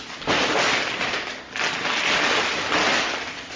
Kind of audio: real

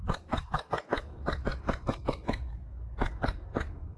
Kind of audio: fake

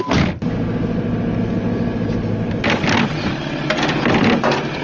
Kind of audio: real